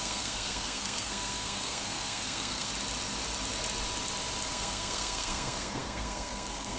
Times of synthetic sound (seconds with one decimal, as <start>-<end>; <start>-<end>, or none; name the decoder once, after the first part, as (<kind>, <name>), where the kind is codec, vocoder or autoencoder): 0.0-2.7 (codec, SNAC); 4.5-6.8